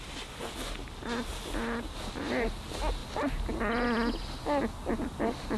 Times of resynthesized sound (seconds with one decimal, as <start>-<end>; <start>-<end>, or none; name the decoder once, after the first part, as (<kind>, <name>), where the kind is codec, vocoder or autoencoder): none